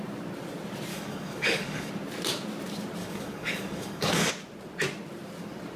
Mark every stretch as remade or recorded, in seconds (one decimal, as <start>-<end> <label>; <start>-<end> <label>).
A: 0.0-0.9 recorded; 0.9-1.9 remade; 1.9-3.0 recorded; 3.0-4.3 remade; 4.3-5.8 recorded